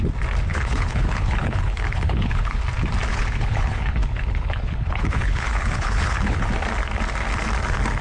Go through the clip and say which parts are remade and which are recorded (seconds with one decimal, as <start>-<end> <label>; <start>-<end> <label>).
0.0-0.5 recorded; 0.5-2.6 remade; 2.6-3.1 recorded; 3.1-6.5 remade; 6.5-8.0 recorded